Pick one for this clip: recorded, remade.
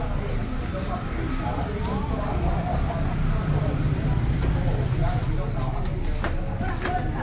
recorded